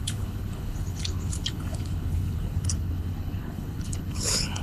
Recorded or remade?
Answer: remade